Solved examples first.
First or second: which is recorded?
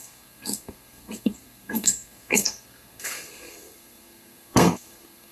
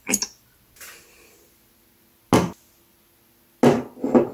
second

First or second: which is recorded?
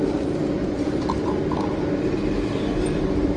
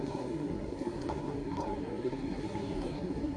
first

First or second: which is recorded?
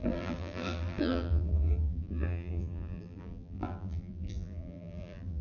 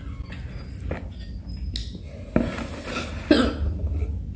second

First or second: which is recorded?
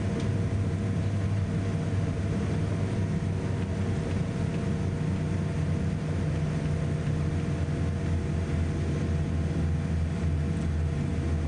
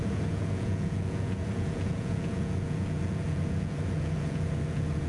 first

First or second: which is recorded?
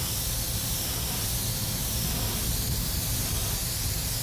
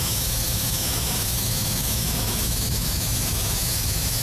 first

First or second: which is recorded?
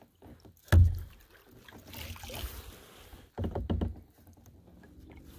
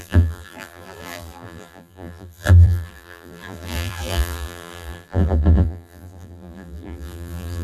first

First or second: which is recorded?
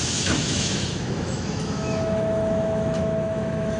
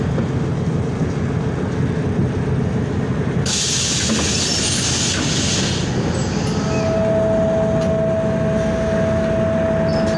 second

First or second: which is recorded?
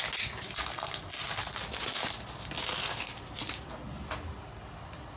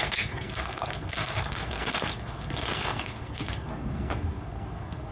first